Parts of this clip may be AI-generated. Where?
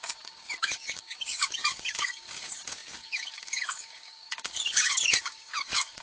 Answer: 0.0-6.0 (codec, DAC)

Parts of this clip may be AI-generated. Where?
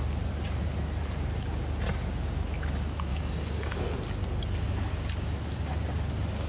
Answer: 3.1-3.8 (codec, DAC)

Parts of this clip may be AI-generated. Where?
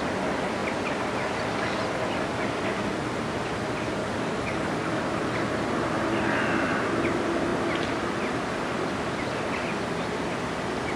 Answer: 4.0-5.0 (codec, DAC)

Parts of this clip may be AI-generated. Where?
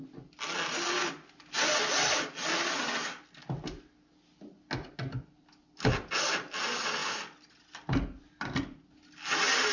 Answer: none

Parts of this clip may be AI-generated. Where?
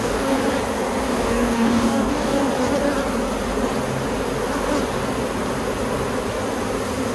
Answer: 0.0-0.4 (codec, DAC); 1.0-2.4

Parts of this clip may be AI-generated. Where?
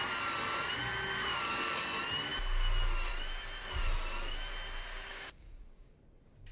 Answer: 1.2-1.8 (codec, DAC); 5.1-5.9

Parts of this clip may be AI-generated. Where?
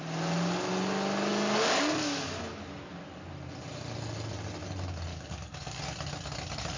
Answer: 1.3-2.4 (codec, DAC); 5.1-5.8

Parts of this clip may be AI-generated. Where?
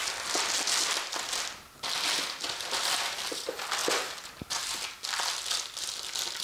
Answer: none